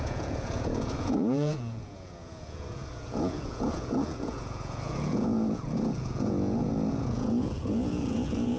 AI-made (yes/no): yes